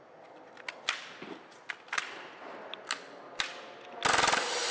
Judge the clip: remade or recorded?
recorded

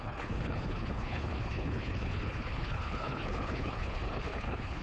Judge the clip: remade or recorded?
remade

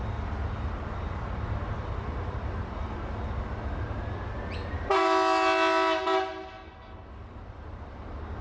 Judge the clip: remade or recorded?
recorded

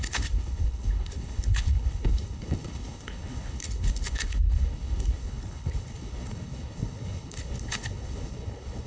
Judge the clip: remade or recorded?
remade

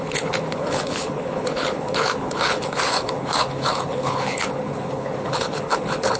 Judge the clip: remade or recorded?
remade